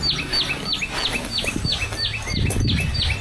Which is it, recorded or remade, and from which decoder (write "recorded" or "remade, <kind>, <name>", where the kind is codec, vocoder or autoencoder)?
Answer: recorded